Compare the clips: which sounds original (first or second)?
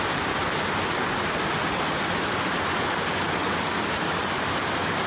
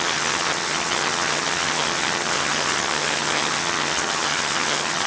first